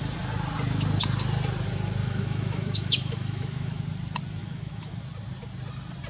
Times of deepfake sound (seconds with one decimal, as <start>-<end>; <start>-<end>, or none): 2.0-3.8; 4.4-5.0